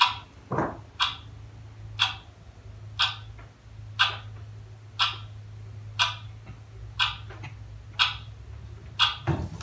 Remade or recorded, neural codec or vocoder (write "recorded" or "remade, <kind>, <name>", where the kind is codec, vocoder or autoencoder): recorded